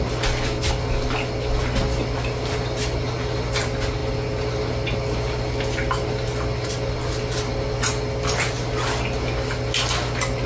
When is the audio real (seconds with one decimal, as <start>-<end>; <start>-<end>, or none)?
0.0-10.5